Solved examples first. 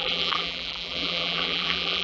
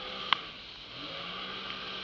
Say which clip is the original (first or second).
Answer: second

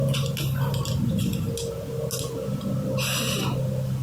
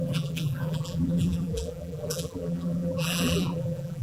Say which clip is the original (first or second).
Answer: first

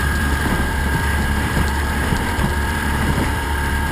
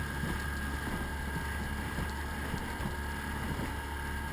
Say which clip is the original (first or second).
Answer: second